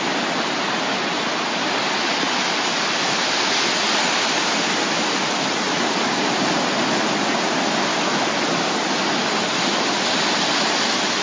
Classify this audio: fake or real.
real